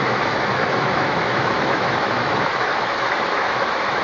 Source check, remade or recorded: remade